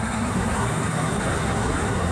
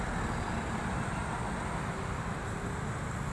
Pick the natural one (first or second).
second